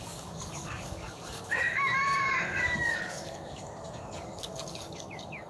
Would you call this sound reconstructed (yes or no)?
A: yes